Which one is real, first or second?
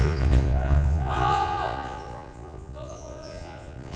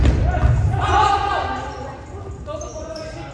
second